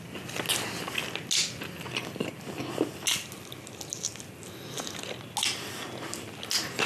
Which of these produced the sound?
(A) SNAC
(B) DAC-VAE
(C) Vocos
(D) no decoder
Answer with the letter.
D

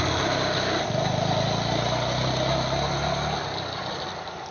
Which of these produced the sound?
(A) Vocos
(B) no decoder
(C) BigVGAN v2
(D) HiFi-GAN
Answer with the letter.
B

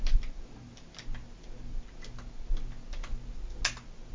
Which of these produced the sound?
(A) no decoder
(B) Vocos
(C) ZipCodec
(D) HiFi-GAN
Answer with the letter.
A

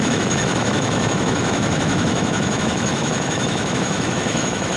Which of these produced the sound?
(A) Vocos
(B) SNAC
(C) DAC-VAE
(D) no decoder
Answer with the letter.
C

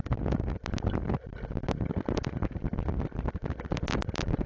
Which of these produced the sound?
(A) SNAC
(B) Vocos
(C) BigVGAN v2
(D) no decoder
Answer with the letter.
D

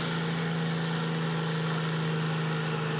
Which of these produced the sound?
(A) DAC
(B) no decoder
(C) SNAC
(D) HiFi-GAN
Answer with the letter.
B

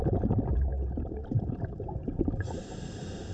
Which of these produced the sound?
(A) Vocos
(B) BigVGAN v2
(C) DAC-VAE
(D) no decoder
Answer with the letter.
B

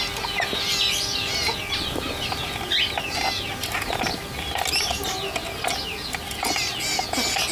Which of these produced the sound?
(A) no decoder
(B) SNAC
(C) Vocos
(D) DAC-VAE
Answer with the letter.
A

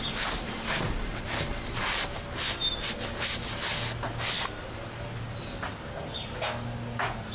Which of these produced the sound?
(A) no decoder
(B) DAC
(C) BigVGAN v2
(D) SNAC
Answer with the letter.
A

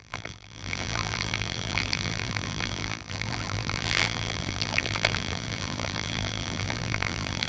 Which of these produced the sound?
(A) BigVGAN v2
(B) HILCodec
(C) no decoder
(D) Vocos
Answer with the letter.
A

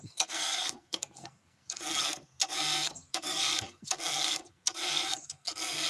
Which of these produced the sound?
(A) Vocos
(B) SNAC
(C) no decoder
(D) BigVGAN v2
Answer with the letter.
B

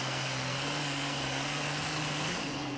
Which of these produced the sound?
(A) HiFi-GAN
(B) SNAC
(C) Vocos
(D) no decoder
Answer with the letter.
B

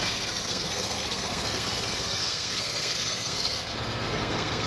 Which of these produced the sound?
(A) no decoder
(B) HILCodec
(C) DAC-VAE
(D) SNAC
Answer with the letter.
D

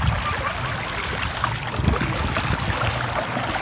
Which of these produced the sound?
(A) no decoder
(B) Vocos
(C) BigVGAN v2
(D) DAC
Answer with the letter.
A